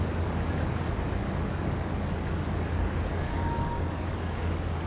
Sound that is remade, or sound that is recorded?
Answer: remade